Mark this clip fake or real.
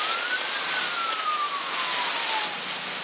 real